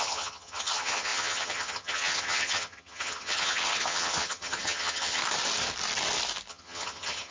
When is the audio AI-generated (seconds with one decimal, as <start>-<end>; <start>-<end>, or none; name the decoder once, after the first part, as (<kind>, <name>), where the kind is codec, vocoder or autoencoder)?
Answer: 0.0-5.2 (vocoder, HiFi-GAN); 6.5-7.3